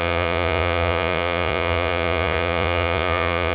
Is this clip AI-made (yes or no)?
yes